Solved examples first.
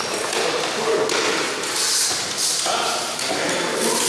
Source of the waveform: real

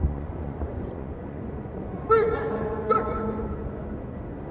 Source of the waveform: fake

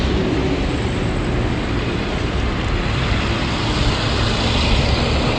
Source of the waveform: real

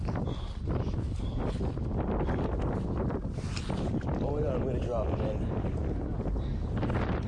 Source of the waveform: real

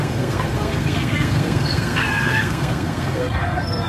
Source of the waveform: fake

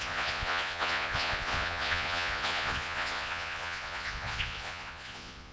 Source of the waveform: fake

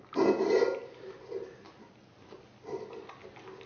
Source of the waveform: real